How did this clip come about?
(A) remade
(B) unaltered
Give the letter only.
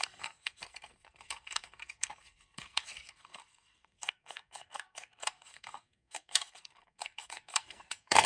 A